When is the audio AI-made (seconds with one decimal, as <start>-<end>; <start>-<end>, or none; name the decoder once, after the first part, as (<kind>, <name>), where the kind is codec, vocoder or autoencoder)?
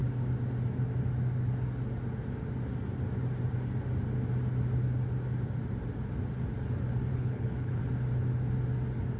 7.1-7.8 (codec, HILCodec)